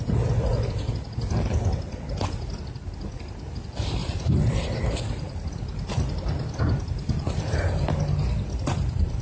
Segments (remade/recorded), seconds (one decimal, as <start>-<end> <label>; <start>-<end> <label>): 0.0-9.2 recorded